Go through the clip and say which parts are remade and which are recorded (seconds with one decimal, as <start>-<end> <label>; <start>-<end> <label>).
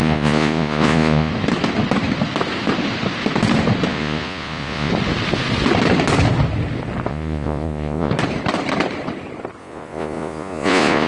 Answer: 0.0-1.3 remade; 1.3-3.9 recorded; 3.9-4.9 remade; 4.9-7.1 recorded; 7.1-8.1 remade; 8.1-9.6 recorded; 9.6-11.1 remade